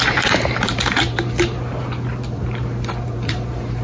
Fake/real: fake